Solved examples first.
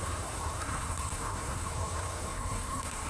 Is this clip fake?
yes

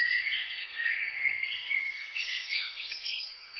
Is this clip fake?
yes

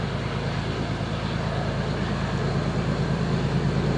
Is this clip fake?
no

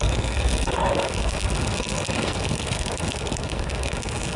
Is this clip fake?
yes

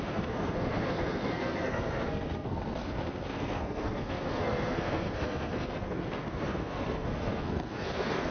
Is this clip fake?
yes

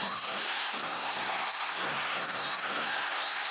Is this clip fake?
yes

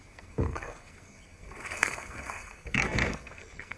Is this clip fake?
yes